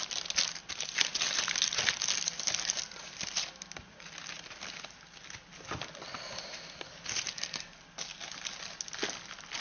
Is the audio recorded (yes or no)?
yes